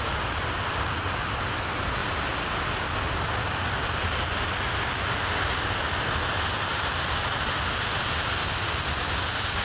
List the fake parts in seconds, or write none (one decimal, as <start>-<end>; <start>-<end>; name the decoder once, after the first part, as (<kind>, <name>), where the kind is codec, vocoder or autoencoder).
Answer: none